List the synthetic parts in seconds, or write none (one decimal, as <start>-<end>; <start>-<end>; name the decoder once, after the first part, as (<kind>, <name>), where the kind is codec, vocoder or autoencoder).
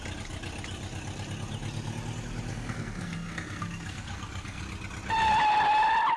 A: 2.5-4.6 (codec, SNAC)